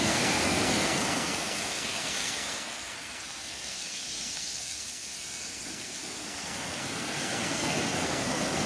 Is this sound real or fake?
fake